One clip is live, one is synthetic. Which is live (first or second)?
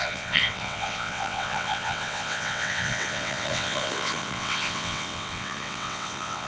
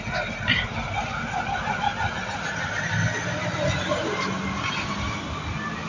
second